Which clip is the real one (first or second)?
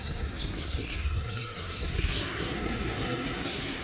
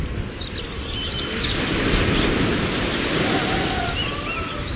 second